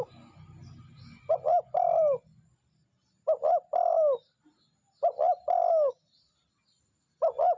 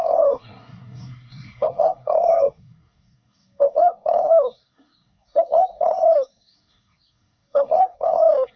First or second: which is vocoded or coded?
second